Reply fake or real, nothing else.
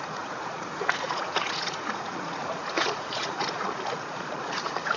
fake